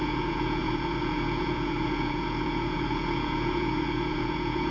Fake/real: fake